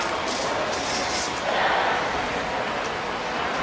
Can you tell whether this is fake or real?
real